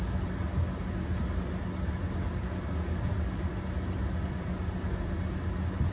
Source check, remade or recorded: recorded